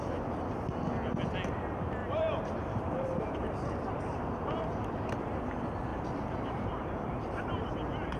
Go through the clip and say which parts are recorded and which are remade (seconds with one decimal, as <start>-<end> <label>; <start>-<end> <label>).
0.0-2.0 recorded; 2.0-5.1 remade; 5.1-5.9 recorded; 5.9-6.7 remade; 6.7-8.2 recorded